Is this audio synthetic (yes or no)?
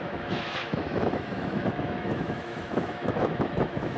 yes